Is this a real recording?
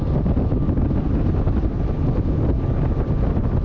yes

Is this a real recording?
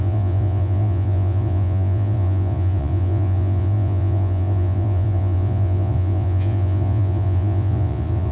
no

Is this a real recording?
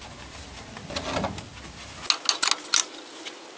yes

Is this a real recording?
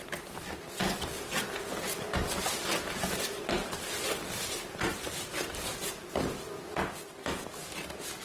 yes